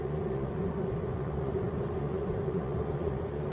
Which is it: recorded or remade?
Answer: remade